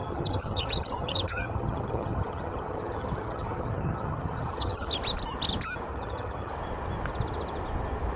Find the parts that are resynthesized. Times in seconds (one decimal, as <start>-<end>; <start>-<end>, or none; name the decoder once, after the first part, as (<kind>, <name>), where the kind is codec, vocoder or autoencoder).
0.0-4.9 (vocoder, HiFi-GAN); 5.9-6.5